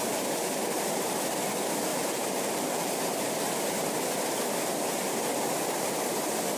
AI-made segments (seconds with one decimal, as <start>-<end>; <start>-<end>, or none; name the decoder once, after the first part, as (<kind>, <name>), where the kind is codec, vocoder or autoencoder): none